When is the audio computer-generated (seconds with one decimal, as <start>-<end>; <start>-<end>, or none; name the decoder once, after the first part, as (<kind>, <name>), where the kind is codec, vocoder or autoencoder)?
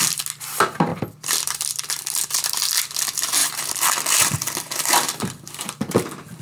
0.9-2.0 (vocoder, BigVGAN v2); 3.4-5.8